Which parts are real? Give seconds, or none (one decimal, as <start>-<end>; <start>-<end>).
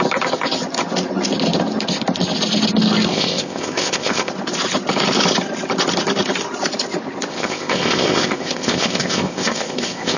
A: 0.0-3.1; 4.3-7.3